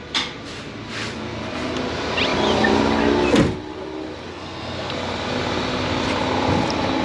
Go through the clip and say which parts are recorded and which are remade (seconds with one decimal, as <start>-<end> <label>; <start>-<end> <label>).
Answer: 0.0-4.3 recorded; 4.3-4.9 remade; 4.9-7.0 recorded